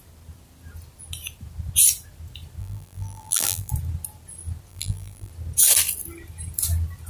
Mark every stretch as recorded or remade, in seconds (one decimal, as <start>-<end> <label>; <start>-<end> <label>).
0.0-2.6 recorded; 2.6-3.7 remade; 3.7-4.7 recorded; 4.7-5.3 remade; 5.3-7.1 recorded